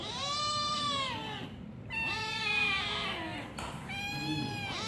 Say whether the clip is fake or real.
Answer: real